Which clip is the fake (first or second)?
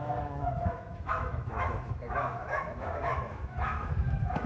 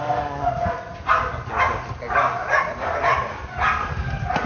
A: first